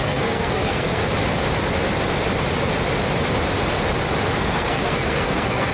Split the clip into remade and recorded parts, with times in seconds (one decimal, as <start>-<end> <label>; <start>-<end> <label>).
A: 0.0-1.0 remade; 1.0-4.4 recorded; 4.4-5.7 remade